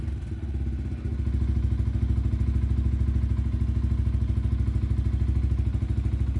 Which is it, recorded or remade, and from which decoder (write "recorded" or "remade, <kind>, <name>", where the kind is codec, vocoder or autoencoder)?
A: recorded